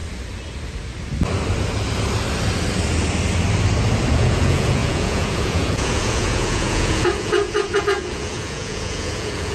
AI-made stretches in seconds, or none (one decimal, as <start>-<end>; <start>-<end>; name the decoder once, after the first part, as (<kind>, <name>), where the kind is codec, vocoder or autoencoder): 4.1-9.5 (vocoder, Vocos)